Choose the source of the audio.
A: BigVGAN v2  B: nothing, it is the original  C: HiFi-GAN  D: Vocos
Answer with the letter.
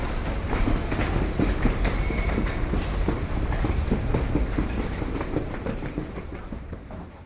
A